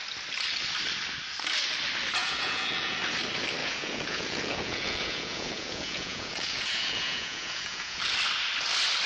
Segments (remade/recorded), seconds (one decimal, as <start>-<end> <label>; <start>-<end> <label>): 0.0-2.2 recorded; 2.2-3.0 remade; 3.0-3.6 recorded; 3.6-8.0 remade; 8.0-9.1 recorded